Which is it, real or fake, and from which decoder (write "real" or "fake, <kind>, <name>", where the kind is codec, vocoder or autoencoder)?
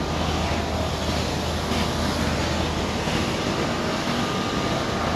real